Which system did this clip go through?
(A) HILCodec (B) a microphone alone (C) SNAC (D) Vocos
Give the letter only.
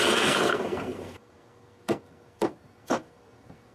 C